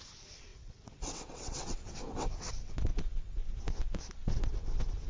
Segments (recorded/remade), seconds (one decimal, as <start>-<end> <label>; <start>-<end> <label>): 0.0-0.5 recorded; 0.5-3.6 remade; 3.6-4.2 recorded; 4.2-5.1 remade